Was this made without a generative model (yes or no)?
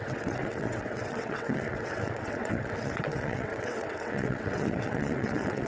no